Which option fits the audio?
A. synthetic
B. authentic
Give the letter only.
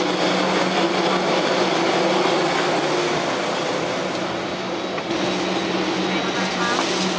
B